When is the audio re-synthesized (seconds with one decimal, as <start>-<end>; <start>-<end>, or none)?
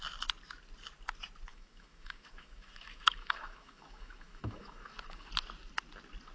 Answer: 1.5-5.3